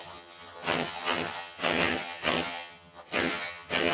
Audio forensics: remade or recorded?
remade